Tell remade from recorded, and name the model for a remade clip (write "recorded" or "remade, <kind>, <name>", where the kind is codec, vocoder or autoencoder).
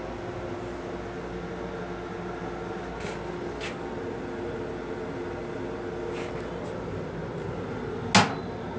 recorded